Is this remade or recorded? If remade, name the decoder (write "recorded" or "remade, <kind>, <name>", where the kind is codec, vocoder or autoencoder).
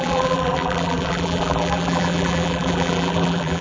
remade, vocoder, BigVGAN v2